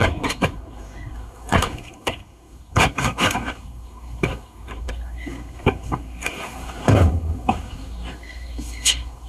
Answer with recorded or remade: remade